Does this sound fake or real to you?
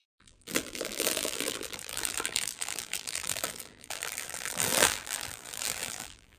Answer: fake